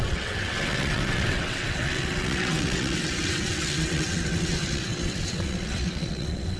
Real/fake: fake